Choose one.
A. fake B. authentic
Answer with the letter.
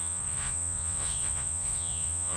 A